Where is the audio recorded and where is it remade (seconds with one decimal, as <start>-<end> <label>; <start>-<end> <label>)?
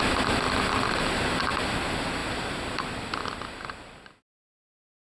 0.0-5.0 recorded